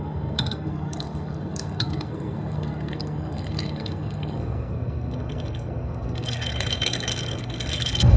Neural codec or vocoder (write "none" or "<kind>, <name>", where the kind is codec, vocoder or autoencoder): codec, SNAC